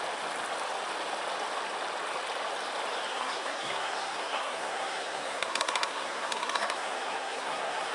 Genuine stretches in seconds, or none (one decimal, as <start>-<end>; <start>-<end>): 0.0-3.1